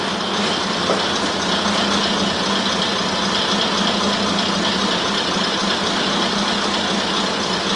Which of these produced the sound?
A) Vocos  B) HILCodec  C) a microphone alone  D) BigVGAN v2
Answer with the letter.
C